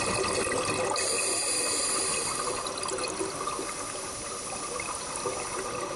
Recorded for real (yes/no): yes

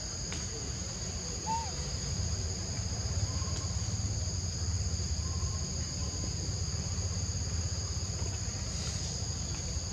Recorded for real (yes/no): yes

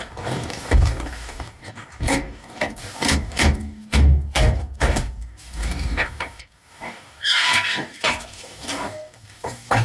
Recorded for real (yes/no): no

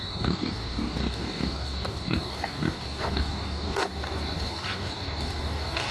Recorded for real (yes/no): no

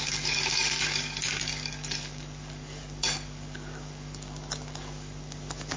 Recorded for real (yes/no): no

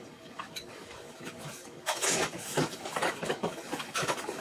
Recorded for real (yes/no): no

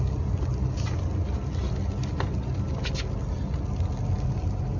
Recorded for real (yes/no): yes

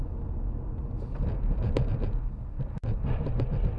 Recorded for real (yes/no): yes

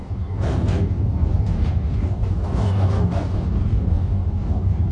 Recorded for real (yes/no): no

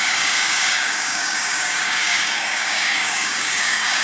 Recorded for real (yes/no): no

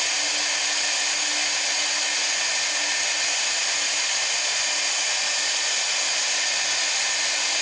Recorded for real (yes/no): yes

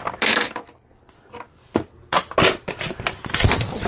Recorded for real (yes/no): yes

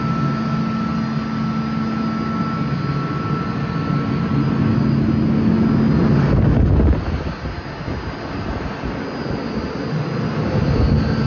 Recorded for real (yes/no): yes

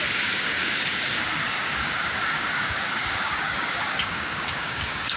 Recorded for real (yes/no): no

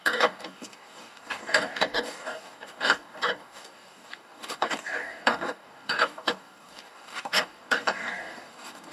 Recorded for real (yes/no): no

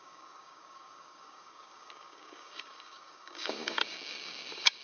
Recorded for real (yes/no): no